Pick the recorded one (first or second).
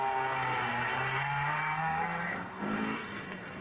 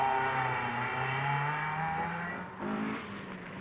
second